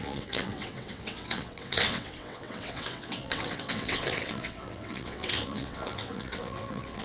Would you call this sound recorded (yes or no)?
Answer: no